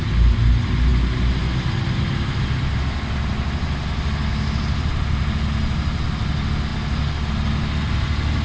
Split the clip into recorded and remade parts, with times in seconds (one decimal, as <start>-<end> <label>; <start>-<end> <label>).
0.0-8.4 recorded